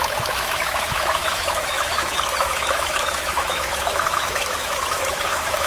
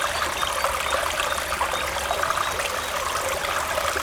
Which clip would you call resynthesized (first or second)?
first